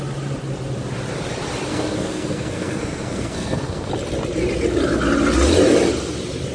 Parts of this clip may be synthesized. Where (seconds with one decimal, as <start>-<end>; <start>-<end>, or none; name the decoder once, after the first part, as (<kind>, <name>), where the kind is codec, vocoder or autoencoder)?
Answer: 1.7-3.9 (codec, SNAC)